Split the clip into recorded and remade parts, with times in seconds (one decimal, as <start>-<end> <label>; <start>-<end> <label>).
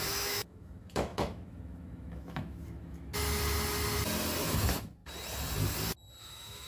0.0-3.1 remade; 3.1-4.4 recorded; 4.4-5.0 remade; 5.0-6.2 recorded; 6.2-6.7 remade